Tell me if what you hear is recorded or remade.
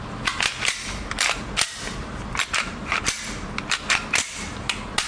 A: recorded